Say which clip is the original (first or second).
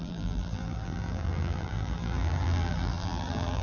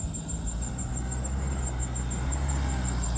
second